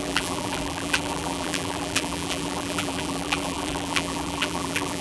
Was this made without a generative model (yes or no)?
no